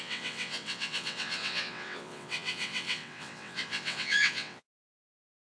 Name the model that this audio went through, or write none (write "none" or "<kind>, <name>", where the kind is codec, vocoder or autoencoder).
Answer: vocoder, WaveNeXt